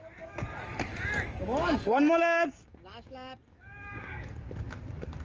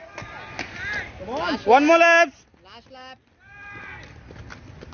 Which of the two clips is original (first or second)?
second